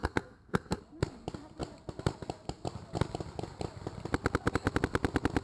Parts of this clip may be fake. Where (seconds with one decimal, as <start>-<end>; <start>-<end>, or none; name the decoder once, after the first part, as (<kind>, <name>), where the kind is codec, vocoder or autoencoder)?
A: 0.0-0.8 (codec, SNAC)